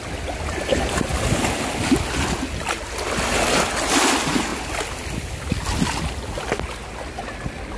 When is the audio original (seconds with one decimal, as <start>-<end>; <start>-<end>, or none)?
0.0-7.8

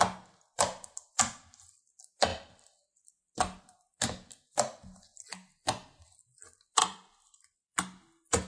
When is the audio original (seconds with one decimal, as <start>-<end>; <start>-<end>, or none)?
0.0-6.8; 7.8-8.5

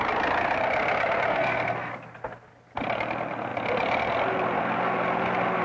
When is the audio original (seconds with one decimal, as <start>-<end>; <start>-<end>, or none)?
0.0-1.3; 1.9-5.6

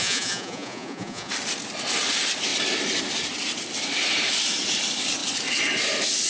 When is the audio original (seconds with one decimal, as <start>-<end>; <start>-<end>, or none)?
1.3-6.3